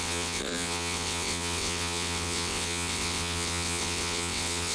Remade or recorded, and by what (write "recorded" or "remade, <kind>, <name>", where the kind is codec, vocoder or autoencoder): remade, vocoder, WaveNeXt